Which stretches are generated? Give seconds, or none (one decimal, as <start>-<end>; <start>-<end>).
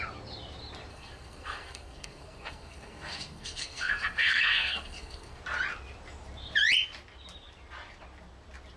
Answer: 0.9-5.4